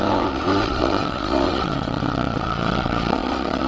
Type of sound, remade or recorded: remade